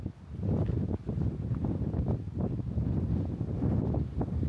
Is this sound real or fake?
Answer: real